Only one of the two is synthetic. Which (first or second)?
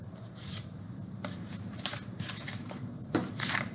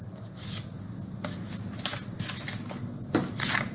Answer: first